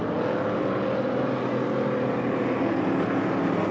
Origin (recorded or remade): recorded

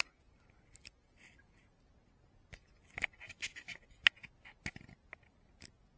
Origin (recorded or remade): recorded